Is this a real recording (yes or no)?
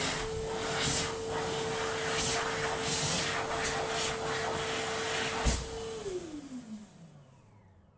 yes